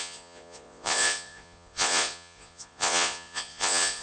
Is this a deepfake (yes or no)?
yes